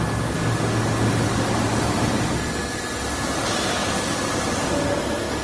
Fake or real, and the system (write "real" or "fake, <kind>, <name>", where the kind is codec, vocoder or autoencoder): real